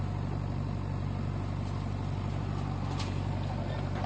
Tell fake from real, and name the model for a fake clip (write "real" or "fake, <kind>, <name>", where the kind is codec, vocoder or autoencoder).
real